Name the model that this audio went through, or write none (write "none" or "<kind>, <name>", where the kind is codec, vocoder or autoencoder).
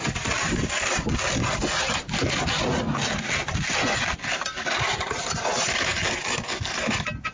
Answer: none